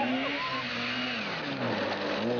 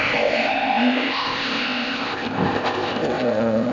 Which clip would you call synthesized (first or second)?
second